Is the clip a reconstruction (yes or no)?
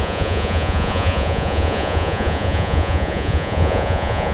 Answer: yes